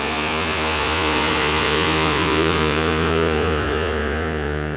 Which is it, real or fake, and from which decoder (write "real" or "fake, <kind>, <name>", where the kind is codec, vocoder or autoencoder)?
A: fake, vocoder, Vocos